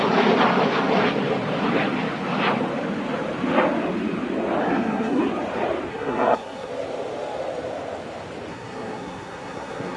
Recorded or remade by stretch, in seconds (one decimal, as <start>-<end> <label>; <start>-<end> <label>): 0.0-4.6 recorded; 4.6-5.2 remade; 5.2-5.9 recorded; 5.9-6.7 remade; 6.7-8.5 recorded; 8.5-10.0 remade